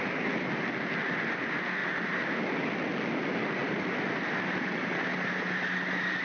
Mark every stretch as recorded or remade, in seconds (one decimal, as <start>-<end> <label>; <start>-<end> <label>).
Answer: 0.0-6.2 recorded